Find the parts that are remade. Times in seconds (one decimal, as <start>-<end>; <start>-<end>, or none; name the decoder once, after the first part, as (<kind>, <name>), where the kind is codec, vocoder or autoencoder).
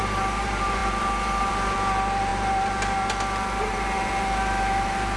0.0-5.2 (vocoder, BigVGAN v2)